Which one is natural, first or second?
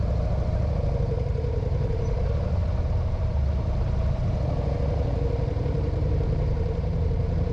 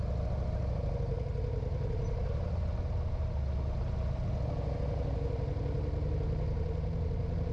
second